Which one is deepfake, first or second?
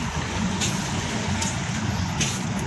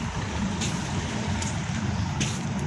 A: first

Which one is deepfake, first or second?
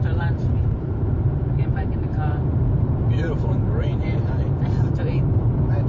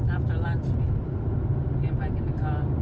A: first